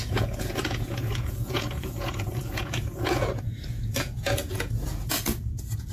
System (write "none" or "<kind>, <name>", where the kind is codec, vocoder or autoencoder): vocoder, Vocos